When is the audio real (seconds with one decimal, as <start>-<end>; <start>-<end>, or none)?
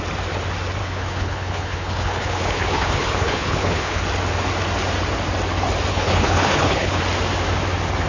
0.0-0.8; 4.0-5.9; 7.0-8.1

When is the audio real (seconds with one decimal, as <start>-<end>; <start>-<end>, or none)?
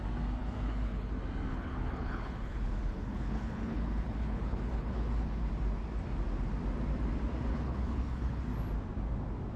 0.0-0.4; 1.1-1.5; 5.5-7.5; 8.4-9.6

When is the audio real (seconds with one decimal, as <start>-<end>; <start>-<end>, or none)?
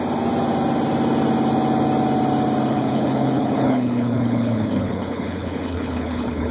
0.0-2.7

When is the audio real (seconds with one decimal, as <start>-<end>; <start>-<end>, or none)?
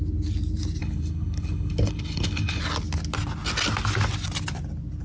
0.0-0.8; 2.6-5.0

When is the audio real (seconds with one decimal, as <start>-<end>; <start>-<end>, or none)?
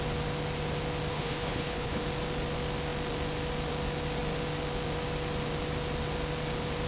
0.0-1.1; 2.0-6.9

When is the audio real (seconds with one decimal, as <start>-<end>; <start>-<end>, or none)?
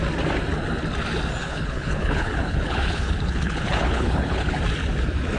0.0-1.4; 4.6-5.4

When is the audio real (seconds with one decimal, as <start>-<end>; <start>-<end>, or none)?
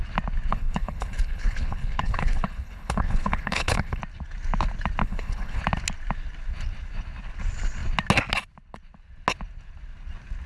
0.0-0.5; 4.0-5.0; 5.6-10.5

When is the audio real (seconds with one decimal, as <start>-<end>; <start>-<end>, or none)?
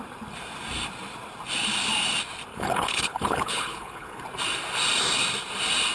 0.0-2.5; 4.2-5.9